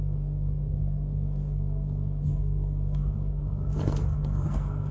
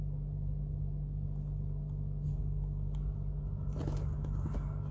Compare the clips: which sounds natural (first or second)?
second